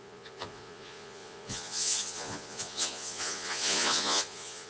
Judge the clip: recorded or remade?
remade